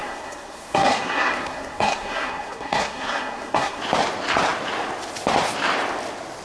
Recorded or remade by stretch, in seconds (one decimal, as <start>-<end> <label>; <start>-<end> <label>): 0.0-3.8 remade; 3.8-6.4 recorded